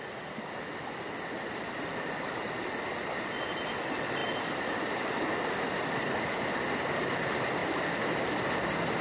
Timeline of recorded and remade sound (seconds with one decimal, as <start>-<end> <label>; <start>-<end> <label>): 0.0-9.0 recorded